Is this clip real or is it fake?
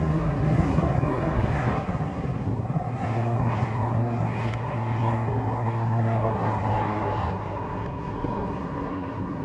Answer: fake